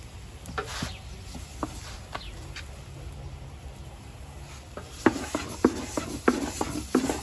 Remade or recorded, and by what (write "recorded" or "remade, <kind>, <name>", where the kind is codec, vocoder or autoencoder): recorded